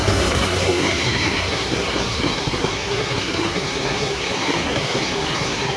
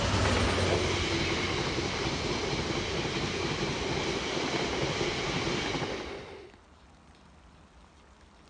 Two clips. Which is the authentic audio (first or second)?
second